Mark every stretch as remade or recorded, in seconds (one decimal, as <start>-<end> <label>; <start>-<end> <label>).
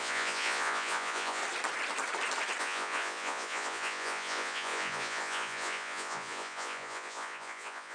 0.0-1.4 remade; 1.4-2.6 recorded; 2.6-7.9 remade